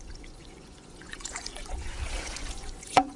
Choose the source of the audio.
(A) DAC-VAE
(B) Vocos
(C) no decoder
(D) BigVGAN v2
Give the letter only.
B